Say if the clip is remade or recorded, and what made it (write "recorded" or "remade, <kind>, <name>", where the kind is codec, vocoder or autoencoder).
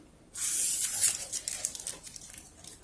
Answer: recorded